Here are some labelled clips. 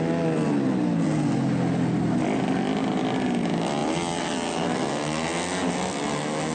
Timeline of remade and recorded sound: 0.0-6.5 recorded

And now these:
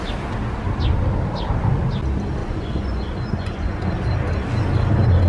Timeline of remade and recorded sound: 0.0-2.4 recorded; 2.4-3.9 remade; 3.9-5.3 recorded

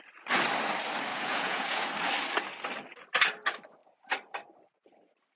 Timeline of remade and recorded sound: 0.0-1.1 recorded; 1.1-1.9 remade; 1.9-5.4 recorded

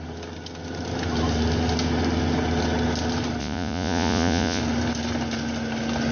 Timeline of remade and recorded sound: 0.0-3.4 recorded; 3.4-4.6 remade; 4.6-6.1 recorded

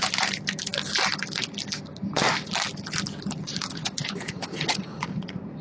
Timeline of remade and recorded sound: 0.0-3.5 recorded; 3.5-5.6 remade

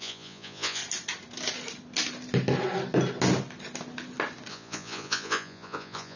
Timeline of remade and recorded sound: 0.0-0.8 remade; 0.8-4.5 recorded; 4.5-6.2 remade